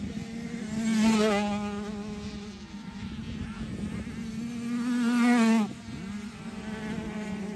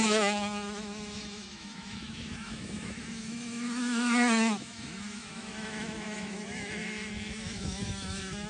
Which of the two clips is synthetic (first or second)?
second